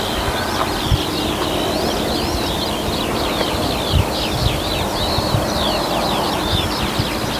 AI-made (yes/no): no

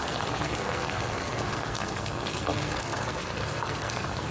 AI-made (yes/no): yes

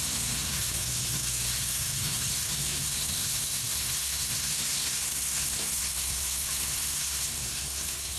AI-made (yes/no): yes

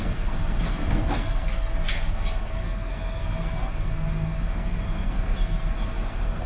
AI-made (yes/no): yes